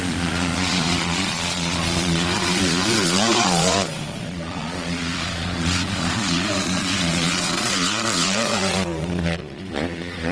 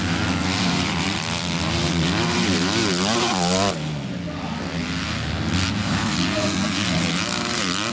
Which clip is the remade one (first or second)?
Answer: first